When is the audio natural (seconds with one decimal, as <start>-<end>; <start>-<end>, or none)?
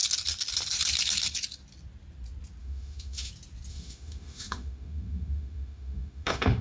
0.0-2.6; 3.3-3.7